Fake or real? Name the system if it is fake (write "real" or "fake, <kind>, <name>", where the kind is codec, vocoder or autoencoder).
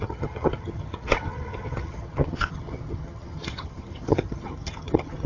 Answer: fake, vocoder, HiFi-GAN